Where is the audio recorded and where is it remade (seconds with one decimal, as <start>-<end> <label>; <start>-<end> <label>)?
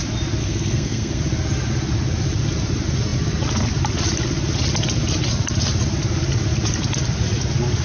0.0-0.4 recorded; 0.4-1.2 remade; 1.2-7.8 recorded